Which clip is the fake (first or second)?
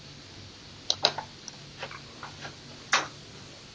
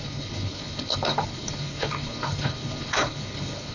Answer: second